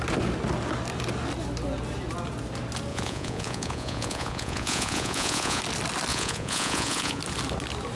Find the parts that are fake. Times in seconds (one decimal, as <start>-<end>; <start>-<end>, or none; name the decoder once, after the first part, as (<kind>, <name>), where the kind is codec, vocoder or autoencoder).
2.9-5.6 (vocoder, Vocos); 6.1-7.2